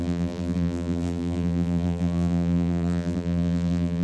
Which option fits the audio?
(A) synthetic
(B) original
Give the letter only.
A